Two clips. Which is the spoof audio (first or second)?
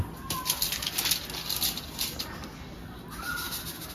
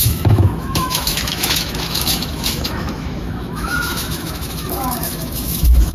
second